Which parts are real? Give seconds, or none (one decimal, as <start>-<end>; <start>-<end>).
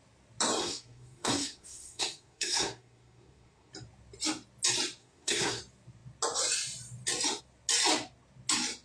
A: 0.0-0.6; 3.7-5.0; 5.6-8.8